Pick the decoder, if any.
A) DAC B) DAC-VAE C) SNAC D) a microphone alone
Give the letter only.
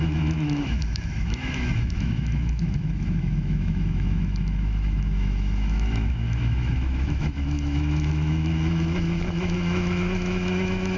B